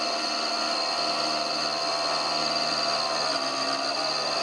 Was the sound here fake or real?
fake